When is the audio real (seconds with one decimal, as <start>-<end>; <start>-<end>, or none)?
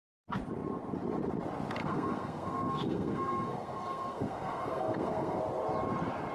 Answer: 0.0-1.8; 5.4-6.3